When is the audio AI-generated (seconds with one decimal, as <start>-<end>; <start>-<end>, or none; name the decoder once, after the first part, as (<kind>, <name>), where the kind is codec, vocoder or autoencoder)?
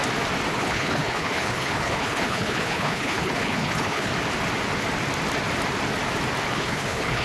0.5-4.1 (codec, HILCodec); 6.5-7.2